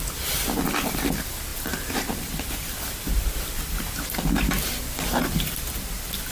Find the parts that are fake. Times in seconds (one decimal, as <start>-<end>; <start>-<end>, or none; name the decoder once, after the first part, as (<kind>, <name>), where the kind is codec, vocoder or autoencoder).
1.5-5.2 (vocoder, BigVGAN v2)